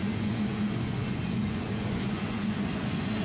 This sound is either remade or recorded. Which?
remade